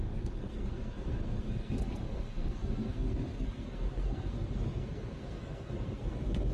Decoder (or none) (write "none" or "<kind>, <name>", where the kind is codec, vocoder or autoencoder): codec, SNAC